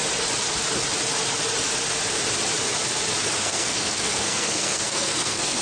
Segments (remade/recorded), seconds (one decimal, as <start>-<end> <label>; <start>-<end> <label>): 0.0-3.4 recorded; 3.4-5.6 remade